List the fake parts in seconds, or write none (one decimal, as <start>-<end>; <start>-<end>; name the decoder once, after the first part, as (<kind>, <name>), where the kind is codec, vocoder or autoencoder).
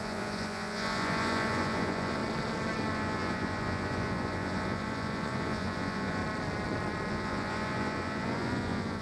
0.0-2.2 (vocoder, Vocos); 2.9-6.2; 7.1-9.0